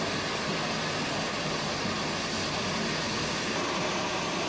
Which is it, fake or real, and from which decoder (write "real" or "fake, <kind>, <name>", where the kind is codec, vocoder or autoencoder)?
real